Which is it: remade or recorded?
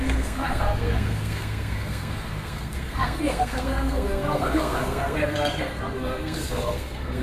remade